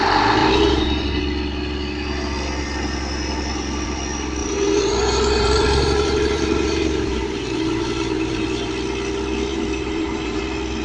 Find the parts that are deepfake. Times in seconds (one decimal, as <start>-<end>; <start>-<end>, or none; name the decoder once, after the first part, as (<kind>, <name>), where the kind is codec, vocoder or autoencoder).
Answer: 0.4-1.2 (vocoder, BigVGAN v2); 4.4-8.7; 9.5-10.4